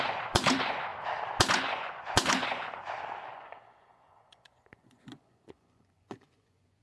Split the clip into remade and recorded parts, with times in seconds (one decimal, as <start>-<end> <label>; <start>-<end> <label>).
0.0-0.9 remade; 0.9-1.5 recorded; 1.5-2.8 remade; 2.8-3.3 recorded; 3.3-6.8 remade